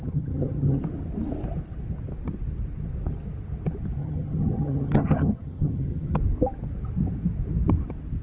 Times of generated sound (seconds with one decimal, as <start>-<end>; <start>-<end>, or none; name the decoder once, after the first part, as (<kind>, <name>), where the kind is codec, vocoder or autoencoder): 0.0-0.8 (vocoder, HiFi-GAN); 4.0-6.2